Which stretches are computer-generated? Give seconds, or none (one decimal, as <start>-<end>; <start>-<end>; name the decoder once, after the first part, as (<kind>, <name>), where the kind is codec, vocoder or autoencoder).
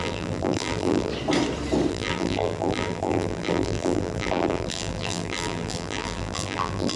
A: 0.0-1.1 (vocoder, BigVGAN v2); 1.9-7.0